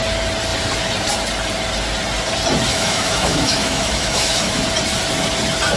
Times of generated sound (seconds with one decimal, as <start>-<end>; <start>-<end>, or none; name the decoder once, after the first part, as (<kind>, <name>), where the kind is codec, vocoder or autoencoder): 2.7-4.6 (autoencoder, DAC-VAE)